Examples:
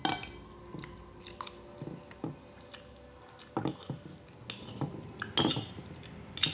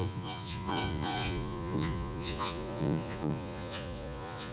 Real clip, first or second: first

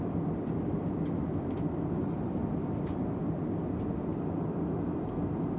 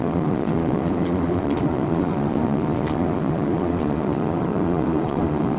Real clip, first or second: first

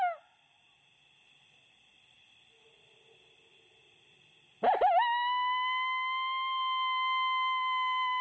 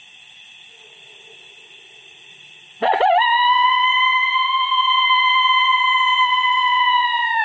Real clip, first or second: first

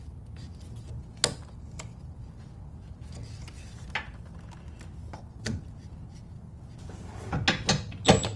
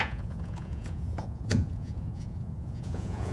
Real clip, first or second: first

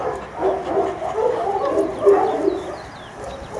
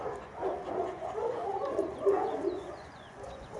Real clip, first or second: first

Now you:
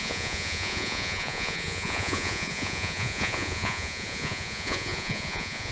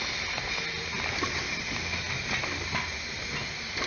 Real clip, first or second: second